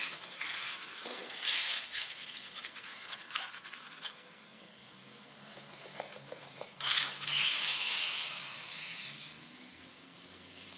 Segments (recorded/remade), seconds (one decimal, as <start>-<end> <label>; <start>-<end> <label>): 0.0-10.8 remade